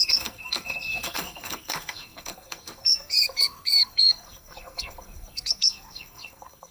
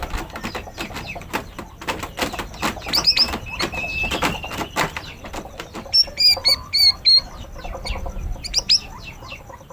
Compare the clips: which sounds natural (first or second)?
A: second